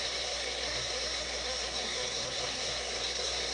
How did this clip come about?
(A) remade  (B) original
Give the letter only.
A